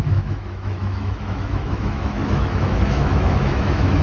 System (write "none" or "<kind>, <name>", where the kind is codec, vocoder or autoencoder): autoencoder, DAC-VAE